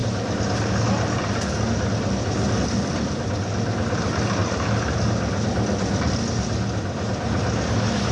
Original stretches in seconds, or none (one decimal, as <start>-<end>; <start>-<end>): 0.0-8.1